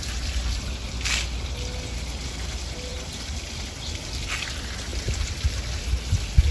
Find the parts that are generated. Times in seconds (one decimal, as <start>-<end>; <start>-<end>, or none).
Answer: none